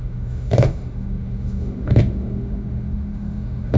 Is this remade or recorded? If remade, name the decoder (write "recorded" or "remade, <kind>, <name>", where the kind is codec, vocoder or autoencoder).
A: remade, autoencoder, DAC-VAE